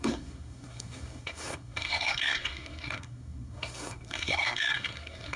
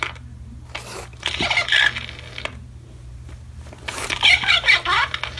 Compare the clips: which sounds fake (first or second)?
first